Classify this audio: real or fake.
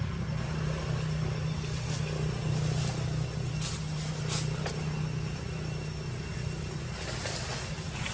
real